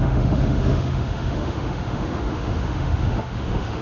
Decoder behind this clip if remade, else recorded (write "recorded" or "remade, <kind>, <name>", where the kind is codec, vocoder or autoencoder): remade, autoencoder, DAC-VAE